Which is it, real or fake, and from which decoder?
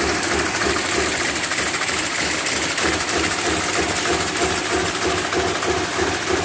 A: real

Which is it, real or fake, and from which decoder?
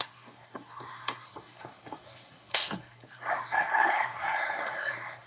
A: fake, codec, SNAC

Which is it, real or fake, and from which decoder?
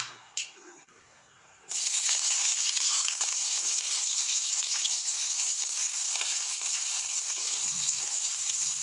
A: fake, codec, SNAC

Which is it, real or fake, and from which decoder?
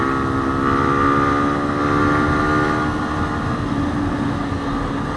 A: real